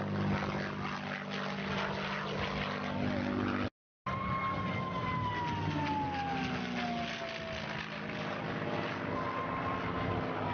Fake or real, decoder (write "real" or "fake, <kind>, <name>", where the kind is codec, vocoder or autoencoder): real